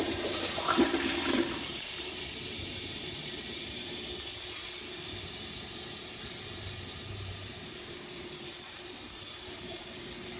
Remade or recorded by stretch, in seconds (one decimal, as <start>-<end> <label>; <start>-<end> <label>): 0.0-3.6 remade; 3.6-5.2 recorded; 5.2-10.4 remade